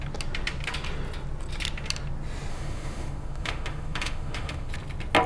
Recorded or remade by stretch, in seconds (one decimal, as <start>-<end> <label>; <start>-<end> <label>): 0.0-2.5 recorded; 2.5-4.7 remade; 4.7-5.3 recorded